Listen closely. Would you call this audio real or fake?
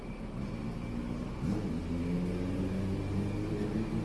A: real